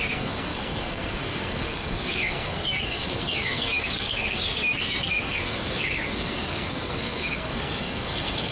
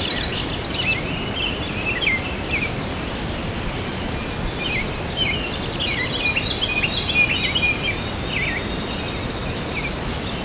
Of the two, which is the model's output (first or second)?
first